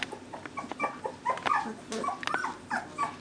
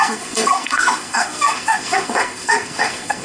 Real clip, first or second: first